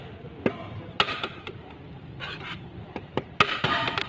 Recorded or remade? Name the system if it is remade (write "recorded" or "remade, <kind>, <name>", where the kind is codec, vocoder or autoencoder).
remade, vocoder, BigVGAN v2